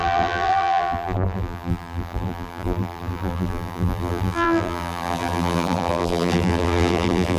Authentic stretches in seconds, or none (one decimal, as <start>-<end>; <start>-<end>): none